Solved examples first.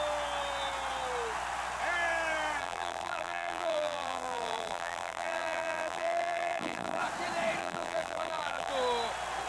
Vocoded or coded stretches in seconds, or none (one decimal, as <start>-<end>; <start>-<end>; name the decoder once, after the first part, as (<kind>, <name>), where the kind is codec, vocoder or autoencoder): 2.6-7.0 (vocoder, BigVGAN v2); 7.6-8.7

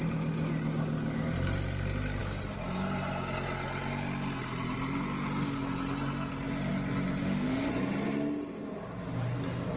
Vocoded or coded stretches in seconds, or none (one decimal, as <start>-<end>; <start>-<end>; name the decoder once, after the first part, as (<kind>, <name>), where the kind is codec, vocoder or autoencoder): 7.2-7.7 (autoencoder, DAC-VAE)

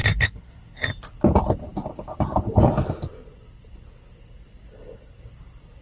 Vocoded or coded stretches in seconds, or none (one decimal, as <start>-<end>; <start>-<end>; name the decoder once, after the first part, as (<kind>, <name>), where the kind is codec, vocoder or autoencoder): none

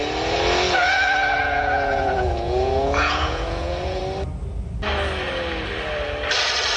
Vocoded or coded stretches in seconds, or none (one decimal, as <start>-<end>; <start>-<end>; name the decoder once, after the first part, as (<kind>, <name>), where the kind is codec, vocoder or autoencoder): 1.4-4.0 (vocoder, Vocos)

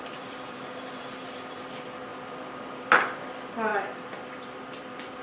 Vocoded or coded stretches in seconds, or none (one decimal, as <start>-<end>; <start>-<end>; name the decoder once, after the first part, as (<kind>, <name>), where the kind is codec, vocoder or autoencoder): 0.0-5.2 (vocoder, BigVGAN v2)

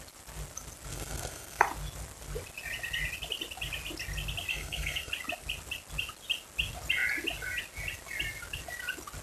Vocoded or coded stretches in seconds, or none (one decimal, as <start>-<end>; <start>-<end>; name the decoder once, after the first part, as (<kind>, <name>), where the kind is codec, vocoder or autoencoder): 0.9-1.6 (codec, SNAC); 4.5-5.1

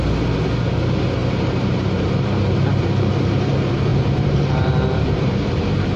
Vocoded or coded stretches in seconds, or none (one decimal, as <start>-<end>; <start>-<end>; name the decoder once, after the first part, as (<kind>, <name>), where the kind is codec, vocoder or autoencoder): 1.2-3.1 (vocoder, BigVGAN v2); 3.9-6.0

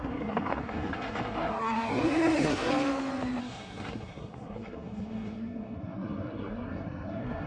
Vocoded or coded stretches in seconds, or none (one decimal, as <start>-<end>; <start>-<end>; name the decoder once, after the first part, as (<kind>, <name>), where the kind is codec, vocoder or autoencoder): 0.0-2.7 (codec, SNAC); 3.4-7.5